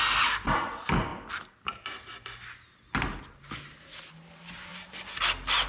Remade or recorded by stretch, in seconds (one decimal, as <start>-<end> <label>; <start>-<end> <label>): 0.0-5.7 recorded